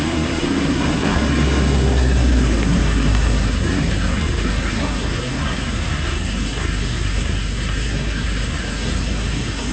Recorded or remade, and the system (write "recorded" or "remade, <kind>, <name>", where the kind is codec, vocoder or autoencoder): remade, codec, SNAC